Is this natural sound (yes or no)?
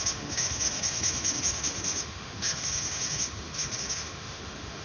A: no